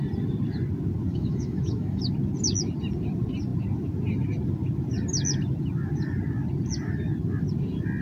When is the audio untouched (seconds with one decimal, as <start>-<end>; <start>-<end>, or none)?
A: 0.0-1.1; 2.0-8.0